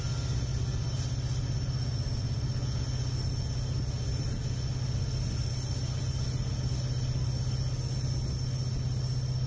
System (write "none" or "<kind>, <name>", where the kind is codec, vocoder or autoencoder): none